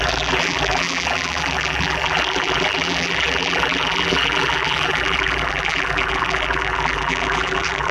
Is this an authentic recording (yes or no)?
no